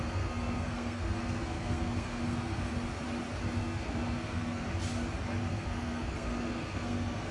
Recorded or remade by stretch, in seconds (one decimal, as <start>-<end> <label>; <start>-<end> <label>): 0.0-2.7 remade; 2.7-3.4 recorded; 3.4-4.6 remade; 4.6-5.5 recorded; 5.5-7.3 remade